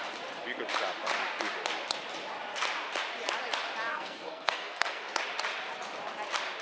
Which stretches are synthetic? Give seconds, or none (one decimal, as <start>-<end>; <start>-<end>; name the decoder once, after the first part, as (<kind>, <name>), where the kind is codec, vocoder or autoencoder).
3.9-5.1 (codec, SNAC)